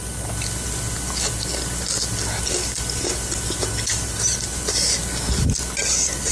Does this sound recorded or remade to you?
recorded